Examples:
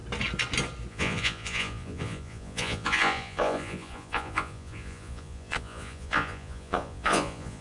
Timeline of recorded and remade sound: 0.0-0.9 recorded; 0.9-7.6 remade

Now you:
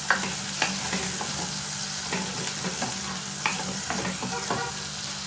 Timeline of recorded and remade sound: 0.0-3.5 recorded; 3.5-4.0 remade; 4.0-5.3 recorded

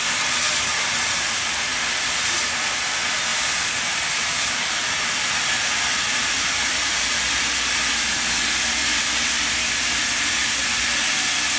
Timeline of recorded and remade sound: 0.0-3.3 recorded; 3.3-6.5 remade; 6.5-11.6 recorded

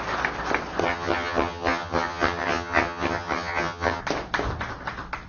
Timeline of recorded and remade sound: 0.0-0.8 recorded; 0.8-4.0 remade; 4.0-5.3 recorded

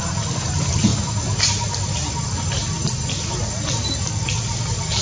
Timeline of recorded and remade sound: 0.0-5.0 recorded

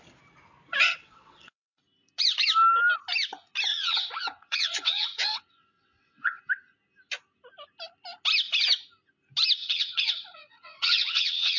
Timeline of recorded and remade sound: 0.0-0.7 recorded; 0.7-1.8 remade; 1.8-3.7 recorded; 3.7-6.4 remade; 6.4-9.6 recorded; 9.6-11.6 remade

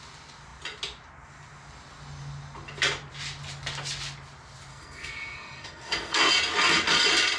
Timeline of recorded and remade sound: 0.0-4.7 recorded; 4.7-6.3 remade; 6.3-7.4 recorded